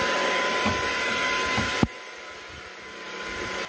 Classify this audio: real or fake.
real